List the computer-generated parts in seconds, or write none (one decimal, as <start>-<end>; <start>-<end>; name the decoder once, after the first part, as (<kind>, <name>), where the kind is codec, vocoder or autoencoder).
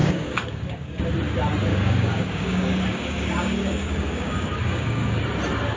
0.0-1.0 (codec, DAC); 1.7-5.2